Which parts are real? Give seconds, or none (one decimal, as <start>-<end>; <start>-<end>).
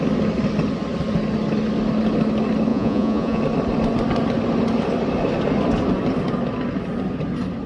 0.0-2.7; 3.4-7.7